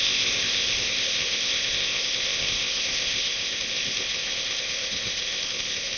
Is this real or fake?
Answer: fake